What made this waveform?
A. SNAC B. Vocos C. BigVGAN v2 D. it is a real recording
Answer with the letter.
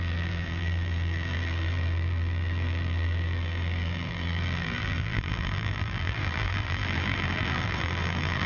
C